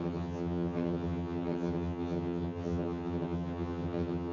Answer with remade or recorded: remade